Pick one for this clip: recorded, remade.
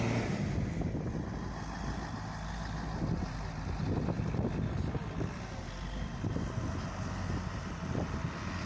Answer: recorded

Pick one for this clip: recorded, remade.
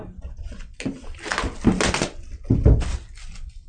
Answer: recorded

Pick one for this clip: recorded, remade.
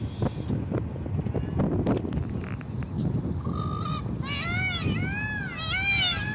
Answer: recorded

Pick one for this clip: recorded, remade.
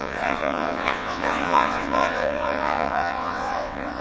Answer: remade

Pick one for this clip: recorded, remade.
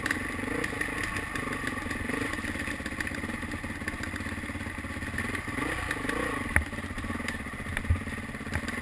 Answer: recorded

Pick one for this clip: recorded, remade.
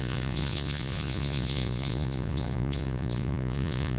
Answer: remade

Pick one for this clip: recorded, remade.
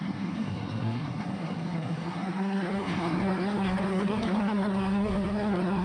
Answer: remade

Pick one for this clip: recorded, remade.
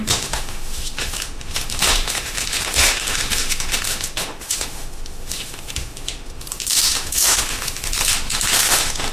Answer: remade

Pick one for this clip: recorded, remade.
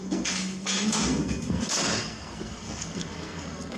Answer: remade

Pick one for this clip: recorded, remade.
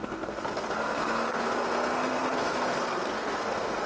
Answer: remade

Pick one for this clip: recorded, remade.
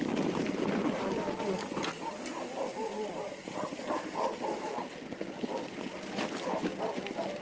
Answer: recorded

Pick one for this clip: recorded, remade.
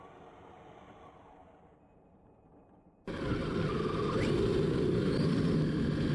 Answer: recorded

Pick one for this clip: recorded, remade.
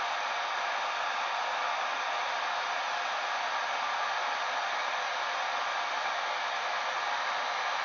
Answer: recorded